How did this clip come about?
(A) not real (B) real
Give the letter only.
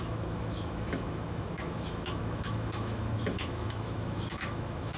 A